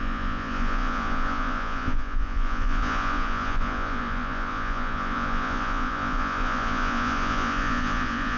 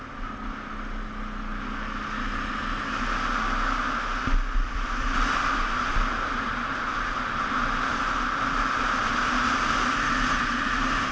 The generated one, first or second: first